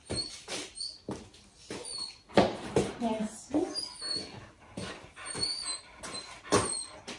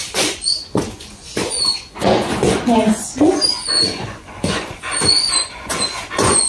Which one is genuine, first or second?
first